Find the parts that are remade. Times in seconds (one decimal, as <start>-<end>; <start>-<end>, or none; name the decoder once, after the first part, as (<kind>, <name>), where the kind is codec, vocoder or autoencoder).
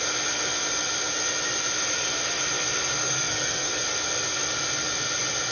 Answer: 3.0-3.7 (codec, SNAC)